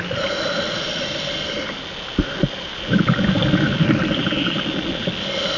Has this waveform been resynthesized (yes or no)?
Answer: no